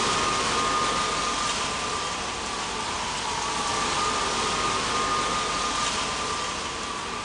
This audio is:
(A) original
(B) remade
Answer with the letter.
A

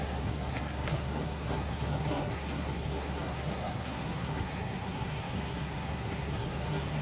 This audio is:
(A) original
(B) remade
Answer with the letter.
B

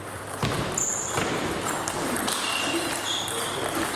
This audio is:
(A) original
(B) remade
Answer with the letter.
B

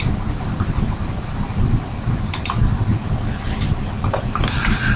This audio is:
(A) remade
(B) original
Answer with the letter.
B